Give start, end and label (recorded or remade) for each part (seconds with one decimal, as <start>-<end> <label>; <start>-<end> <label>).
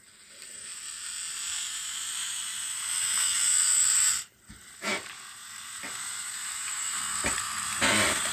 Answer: 0.0-8.3 remade